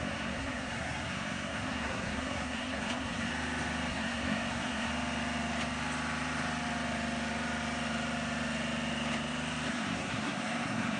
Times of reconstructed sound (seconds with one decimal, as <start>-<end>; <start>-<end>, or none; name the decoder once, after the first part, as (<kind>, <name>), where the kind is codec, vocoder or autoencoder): 0.0-3.3 (codec, SNAC); 3.9-4.9; 9.7-11.0